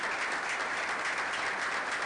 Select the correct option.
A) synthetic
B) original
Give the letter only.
B